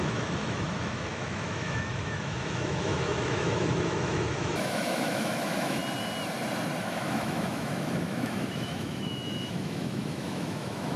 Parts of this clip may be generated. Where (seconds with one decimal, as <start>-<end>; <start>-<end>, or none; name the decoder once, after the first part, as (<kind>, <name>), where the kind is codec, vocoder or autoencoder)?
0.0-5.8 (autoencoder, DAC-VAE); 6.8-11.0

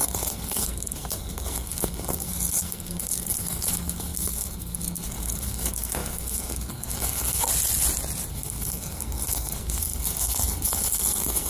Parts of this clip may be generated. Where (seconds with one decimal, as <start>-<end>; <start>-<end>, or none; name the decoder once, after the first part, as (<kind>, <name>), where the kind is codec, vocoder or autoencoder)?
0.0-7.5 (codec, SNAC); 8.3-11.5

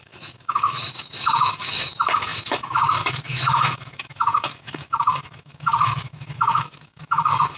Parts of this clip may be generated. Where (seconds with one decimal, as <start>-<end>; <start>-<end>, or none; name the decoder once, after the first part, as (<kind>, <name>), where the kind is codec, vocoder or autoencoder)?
0.0-7.6 (autoencoder, DAC-VAE)